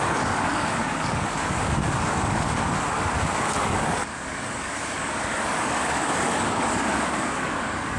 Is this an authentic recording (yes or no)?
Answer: no